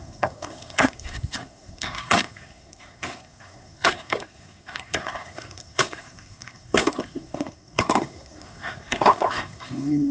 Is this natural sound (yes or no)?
no